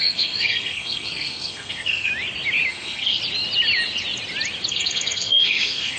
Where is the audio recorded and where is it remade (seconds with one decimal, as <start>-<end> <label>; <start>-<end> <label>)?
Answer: 0.0-2.1 remade; 2.1-2.7 recorded; 2.7-3.2 remade; 3.2-4.7 recorded; 4.7-6.0 remade